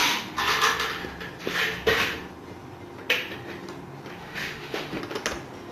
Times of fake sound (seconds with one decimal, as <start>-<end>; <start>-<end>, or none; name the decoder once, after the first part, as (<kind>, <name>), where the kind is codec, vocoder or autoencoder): 4.2-5.0 (autoencoder, DAC-VAE)